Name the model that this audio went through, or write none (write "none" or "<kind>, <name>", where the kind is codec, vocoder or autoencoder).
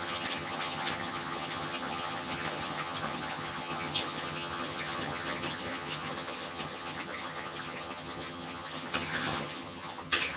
vocoder, HiFi-GAN